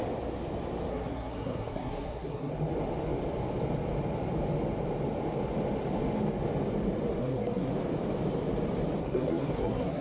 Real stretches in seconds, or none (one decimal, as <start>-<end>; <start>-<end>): 0.0-0.9; 2.5-7.2; 7.7-9.0